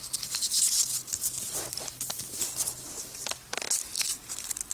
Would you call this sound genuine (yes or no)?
yes